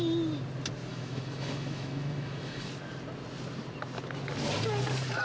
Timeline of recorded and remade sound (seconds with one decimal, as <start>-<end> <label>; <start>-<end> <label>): 0.0-0.9 recorded; 0.9-2.7 remade; 2.7-5.2 recorded